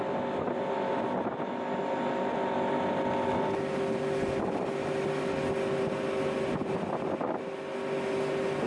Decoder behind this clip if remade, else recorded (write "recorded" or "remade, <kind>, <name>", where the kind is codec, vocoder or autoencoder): recorded